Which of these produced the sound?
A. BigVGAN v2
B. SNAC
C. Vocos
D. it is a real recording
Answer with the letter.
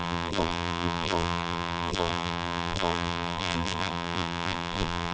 A